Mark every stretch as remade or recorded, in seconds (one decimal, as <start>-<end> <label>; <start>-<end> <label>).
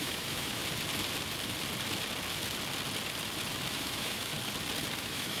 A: 0.0-0.6 remade; 0.6-3.8 recorded; 3.8-4.3 remade; 4.3-5.0 recorded; 5.0-5.4 remade